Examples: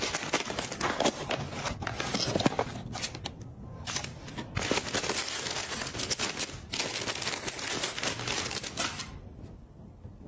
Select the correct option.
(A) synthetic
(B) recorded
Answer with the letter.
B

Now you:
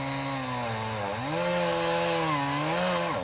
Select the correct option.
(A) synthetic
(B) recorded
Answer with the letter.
B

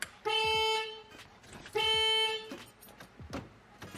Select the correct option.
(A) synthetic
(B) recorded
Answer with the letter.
B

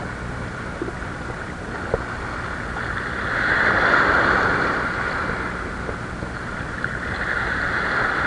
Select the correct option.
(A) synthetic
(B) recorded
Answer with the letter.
B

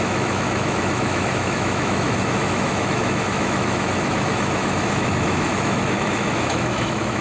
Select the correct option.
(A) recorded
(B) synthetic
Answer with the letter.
B